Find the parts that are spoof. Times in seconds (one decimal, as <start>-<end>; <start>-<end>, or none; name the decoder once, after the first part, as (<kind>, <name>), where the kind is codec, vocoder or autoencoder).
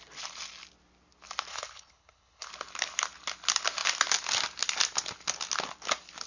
1.5-2.5 (codec, HILCodec)